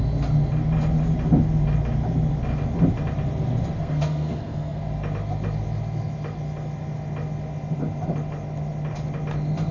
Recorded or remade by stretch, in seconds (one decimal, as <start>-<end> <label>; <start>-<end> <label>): 0.0-3.8 recorded; 3.8-4.8 remade; 4.8-9.7 recorded